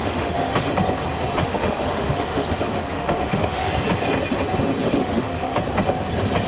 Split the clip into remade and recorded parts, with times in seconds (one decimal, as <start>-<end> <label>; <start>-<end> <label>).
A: 0.0-0.7 remade; 0.7-1.4 recorded; 1.4-3.7 remade; 3.7-4.8 recorded; 4.8-5.6 remade; 5.6-6.5 recorded